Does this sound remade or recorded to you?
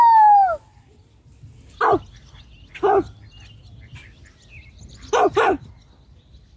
recorded